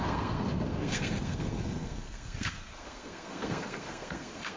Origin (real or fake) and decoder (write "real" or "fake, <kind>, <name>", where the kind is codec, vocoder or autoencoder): fake, codec, SNAC